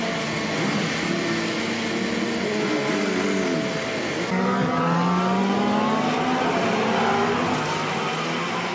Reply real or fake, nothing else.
real